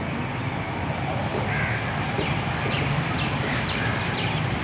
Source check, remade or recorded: recorded